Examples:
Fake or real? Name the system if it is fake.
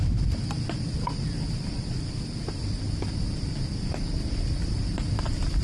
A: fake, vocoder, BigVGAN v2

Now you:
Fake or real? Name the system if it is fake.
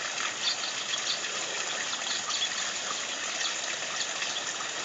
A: real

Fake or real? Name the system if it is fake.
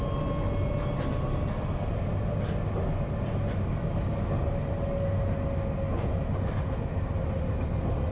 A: real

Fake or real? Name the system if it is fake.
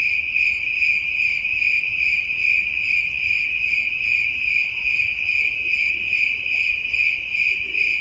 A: fake, vocoder, Vocos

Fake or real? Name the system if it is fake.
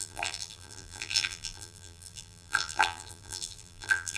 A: fake, vocoder, BigVGAN v2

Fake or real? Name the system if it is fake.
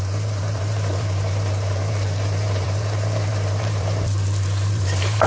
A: fake, vocoder, BigVGAN v2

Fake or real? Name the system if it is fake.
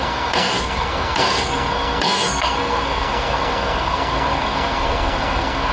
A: fake, codec, SNAC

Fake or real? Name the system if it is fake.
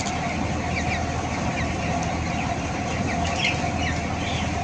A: real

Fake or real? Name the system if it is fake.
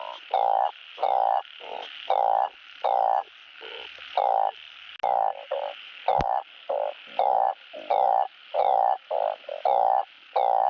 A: real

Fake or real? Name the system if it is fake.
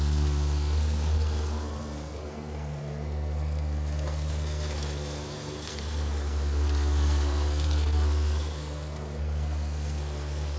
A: fake, codec, SNAC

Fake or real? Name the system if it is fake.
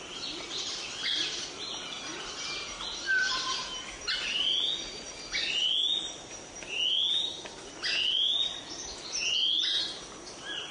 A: real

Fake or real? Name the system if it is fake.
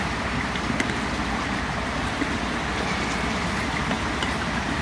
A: real